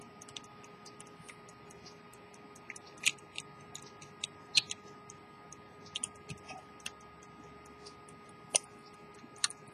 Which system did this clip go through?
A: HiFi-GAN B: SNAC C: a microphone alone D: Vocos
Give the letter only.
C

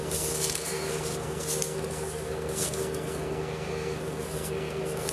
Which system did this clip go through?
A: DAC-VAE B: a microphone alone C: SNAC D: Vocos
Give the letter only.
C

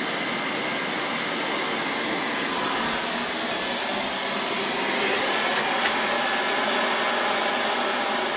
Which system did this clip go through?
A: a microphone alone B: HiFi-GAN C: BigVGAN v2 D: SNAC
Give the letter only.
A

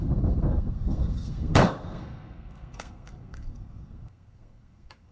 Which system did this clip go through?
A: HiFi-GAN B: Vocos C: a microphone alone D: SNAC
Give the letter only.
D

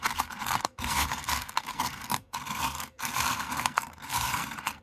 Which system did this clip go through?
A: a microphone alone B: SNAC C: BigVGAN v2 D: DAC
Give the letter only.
B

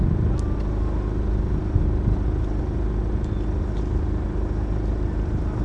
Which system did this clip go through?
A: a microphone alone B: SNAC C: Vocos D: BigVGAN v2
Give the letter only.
A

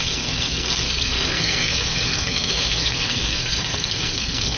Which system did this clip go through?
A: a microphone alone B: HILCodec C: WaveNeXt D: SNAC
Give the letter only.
D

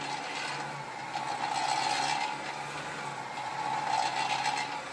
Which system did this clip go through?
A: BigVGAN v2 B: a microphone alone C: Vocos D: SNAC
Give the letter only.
B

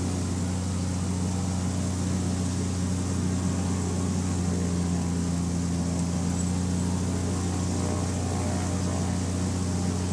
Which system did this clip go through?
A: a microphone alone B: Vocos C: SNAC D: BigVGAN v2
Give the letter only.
A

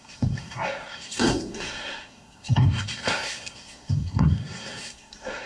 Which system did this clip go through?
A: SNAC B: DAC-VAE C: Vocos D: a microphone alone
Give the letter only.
A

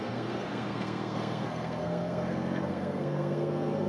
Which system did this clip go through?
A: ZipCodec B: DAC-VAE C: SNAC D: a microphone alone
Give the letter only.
C